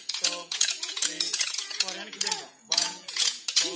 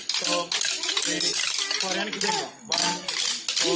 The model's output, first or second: first